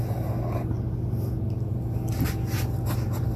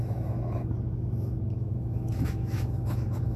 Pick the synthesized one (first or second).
second